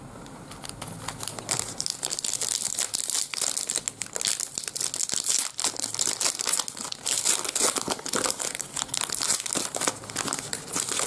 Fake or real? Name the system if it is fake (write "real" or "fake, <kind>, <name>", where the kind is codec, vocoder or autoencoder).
real